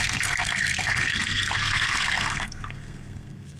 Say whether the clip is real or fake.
fake